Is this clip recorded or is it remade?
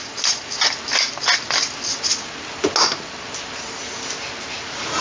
recorded